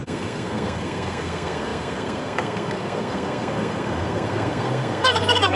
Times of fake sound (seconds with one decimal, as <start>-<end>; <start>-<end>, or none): 0.0-5.6